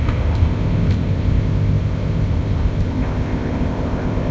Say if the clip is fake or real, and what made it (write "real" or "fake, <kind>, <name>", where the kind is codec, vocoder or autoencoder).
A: fake, codec, ZipCodec